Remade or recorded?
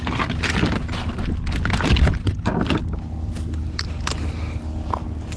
recorded